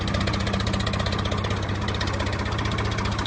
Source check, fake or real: real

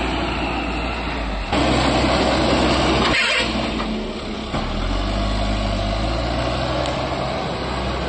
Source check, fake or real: real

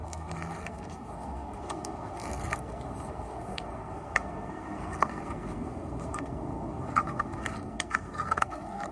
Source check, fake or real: fake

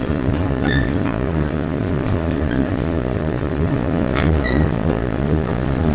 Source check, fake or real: fake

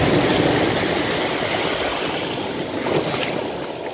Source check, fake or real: real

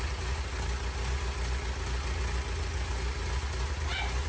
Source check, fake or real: real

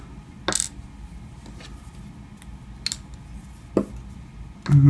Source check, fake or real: real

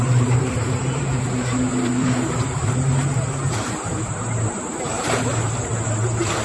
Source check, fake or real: fake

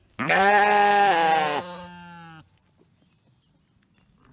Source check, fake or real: real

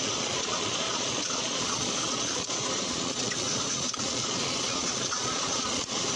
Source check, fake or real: fake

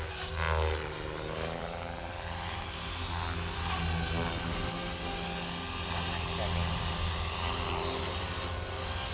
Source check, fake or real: real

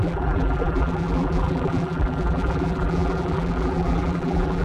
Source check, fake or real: fake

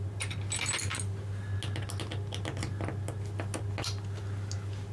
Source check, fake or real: real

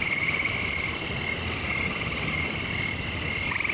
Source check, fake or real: fake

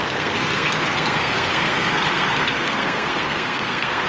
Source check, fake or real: fake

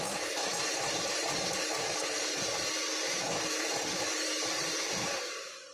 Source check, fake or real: fake